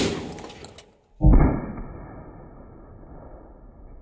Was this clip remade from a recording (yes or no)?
no